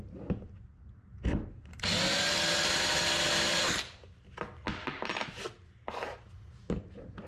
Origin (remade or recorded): recorded